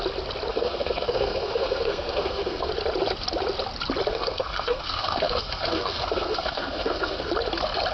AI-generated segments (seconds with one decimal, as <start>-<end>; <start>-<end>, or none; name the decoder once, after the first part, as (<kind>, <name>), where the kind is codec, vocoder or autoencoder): 0.5-2.7 (codec, SNAC); 4.1-7.3

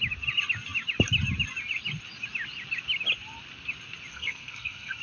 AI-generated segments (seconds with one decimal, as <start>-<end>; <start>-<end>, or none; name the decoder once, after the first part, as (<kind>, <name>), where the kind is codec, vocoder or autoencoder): 4.1-5.0 (codec, SNAC)

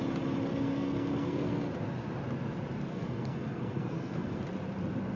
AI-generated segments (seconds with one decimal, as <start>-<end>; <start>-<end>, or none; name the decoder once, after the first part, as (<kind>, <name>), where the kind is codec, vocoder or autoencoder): 0.5-1.7 (codec, SNAC); 2.9-4.4

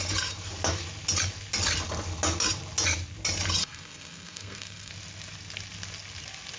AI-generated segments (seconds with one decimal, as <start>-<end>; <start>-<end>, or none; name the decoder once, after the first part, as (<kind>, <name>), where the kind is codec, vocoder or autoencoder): 3.6-4.9 (codec, SNAC)